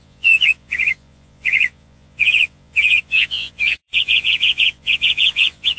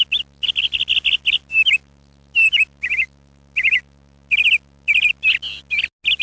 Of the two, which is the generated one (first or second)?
first